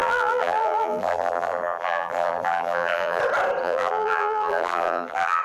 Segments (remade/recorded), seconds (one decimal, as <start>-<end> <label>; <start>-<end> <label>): 0.0-3.2 remade; 3.2-3.6 recorded; 3.6-5.4 remade

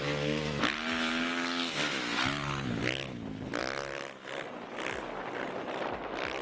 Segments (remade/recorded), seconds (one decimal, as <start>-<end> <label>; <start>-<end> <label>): 0.0-6.4 recorded

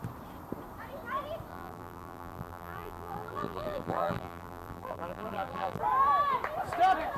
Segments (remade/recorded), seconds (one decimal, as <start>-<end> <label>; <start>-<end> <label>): 0.0-1.5 recorded; 1.5-5.8 remade; 5.8-7.2 recorded

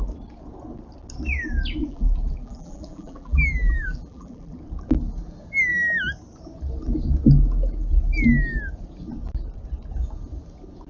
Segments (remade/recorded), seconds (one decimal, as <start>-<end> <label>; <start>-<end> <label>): 0.0-1.8 recorded; 1.8-4.6 remade; 4.6-10.9 recorded